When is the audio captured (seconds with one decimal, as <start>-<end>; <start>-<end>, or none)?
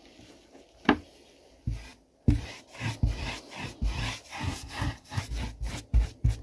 0.0-4.3; 5.2-6.4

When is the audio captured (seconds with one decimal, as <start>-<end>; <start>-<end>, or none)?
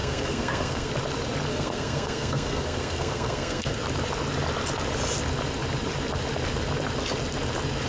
0.9-1.5; 3.8-7.9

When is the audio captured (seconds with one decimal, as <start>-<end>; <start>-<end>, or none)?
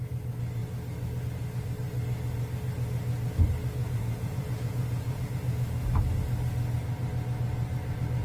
0.0-3.8; 5.3-8.2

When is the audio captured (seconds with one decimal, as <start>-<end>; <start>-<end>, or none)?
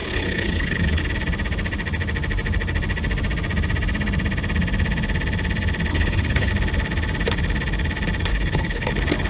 1.0-5.9; 6.5-8.3; 8.9-9.3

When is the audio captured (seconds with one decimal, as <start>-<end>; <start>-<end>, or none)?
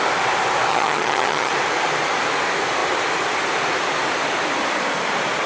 0.0-0.7; 1.5-5.5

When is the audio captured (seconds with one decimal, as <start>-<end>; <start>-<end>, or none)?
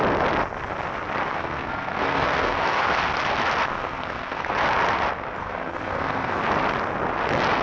0.0-1.3; 3.0-3.7; 4.5-5.4; 6.4-7.6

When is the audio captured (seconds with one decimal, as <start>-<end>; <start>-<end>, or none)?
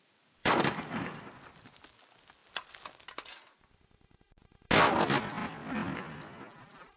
0.0-0.4; 1.2-7.0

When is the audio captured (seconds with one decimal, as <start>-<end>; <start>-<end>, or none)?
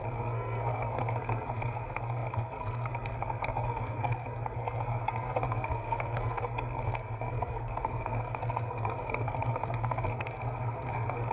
none